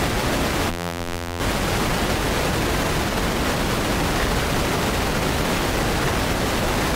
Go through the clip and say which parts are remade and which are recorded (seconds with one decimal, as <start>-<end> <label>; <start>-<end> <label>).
0.0-0.7 recorded; 0.7-1.4 remade; 1.4-7.0 recorded